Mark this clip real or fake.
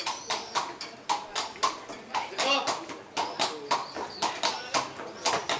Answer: real